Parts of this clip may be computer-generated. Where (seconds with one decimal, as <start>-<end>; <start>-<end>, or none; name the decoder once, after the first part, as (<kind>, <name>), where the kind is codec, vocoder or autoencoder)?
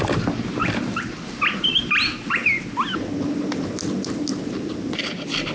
0.0-2.4 (vocoder, BigVGAN v2); 5.1-5.5